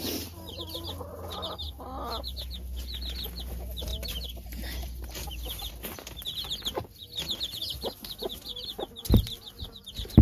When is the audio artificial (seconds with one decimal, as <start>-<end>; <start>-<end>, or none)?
3.9-5.7